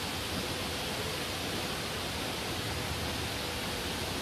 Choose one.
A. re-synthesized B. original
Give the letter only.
B